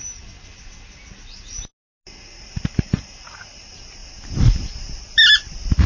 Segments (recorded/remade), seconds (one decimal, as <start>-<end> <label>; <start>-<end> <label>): 0.0-5.9 recorded